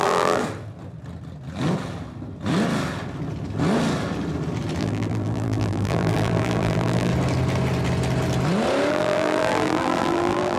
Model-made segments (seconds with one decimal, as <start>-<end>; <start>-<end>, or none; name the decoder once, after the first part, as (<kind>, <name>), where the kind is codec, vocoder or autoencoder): 0.0-0.4 (vocoder, BigVGAN v2); 4.8-7.1; 8.9-10.6